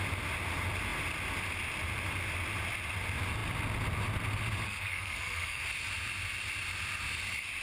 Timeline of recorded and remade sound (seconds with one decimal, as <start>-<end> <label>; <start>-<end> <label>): 0.0-4.6 recorded; 4.6-5.6 remade; 5.6-7.6 recorded